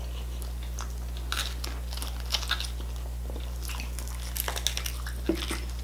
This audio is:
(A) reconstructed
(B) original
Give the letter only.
B